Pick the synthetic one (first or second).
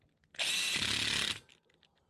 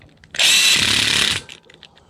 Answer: second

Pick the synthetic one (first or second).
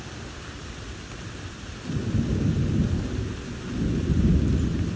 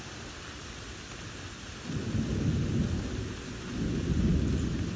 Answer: first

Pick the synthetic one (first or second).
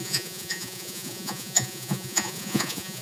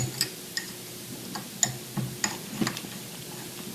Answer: first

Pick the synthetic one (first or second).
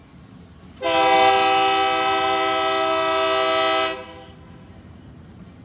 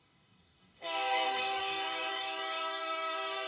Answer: second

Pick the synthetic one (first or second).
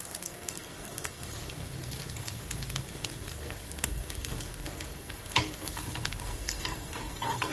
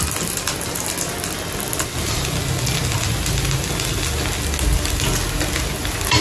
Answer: first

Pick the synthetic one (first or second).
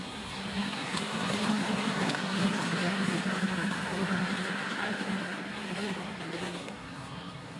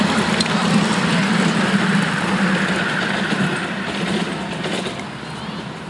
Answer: first